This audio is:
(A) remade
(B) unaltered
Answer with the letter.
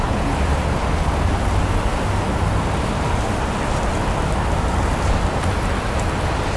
B